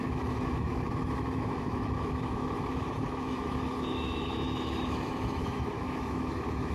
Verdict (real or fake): fake